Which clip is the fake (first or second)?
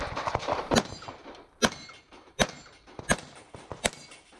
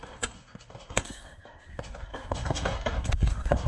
second